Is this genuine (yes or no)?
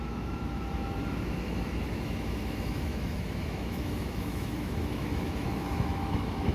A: no